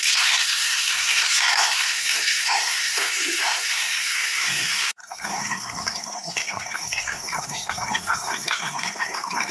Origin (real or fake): fake